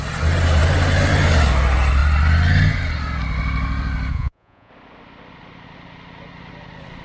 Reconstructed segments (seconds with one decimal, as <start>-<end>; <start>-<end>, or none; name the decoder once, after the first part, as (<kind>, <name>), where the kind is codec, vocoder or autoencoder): 4.1-4.7 (vocoder, Vocos)